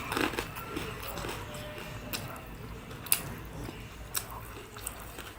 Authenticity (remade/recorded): recorded